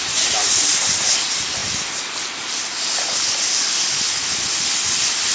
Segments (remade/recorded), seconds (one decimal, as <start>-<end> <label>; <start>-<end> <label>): 0.0-5.3 recorded